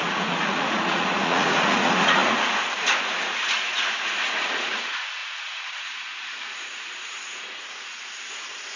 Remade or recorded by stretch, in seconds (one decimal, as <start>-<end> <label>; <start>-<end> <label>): 0.0-8.8 remade